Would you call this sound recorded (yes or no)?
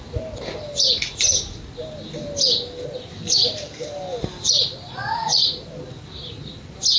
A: yes